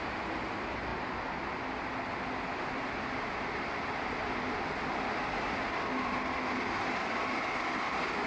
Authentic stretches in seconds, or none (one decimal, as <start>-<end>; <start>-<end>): 0.0-8.3